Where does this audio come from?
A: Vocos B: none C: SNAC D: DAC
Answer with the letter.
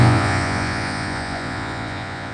A